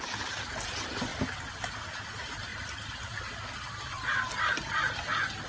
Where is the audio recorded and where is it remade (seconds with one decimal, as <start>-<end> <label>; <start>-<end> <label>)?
0.0-5.5 recorded